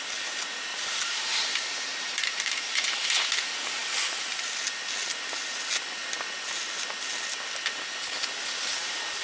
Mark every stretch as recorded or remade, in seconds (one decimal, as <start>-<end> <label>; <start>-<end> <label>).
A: 0.0-0.7 recorded; 0.7-2.9 remade; 2.9-9.2 recorded